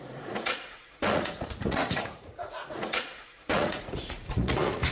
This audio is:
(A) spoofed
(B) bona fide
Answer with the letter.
A